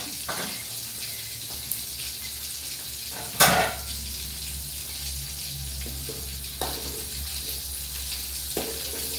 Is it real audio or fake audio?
real